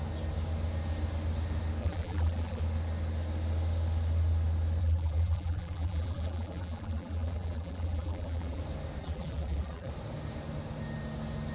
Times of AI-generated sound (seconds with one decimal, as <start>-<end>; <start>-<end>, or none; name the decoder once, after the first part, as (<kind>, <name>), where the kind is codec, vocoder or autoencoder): 1.8-2.6 (vocoder, BigVGAN v2); 4.8-8.6; 9.0-9.9